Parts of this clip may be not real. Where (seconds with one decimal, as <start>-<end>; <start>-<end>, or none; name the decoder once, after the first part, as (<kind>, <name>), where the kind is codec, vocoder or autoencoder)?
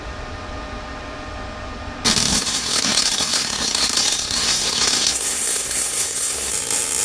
2.3-6.5 (codec, SNAC)